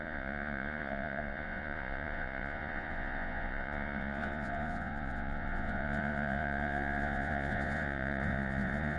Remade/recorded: remade